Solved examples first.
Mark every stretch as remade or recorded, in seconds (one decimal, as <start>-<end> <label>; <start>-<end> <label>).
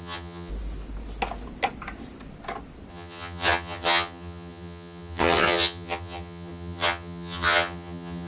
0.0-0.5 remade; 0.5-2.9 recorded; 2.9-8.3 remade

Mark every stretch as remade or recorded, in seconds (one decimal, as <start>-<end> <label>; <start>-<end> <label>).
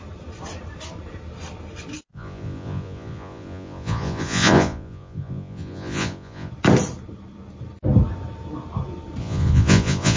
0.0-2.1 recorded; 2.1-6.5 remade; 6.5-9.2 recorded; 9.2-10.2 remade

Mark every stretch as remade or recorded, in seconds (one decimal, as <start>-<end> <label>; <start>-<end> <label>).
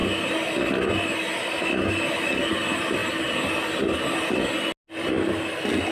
0.0-5.9 recorded